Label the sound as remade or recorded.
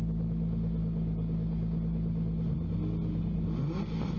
recorded